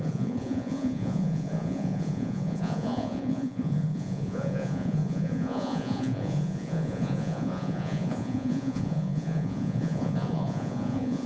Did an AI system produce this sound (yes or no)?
yes